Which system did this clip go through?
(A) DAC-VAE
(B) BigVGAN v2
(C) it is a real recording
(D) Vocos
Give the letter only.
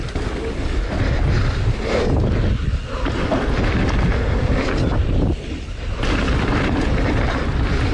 C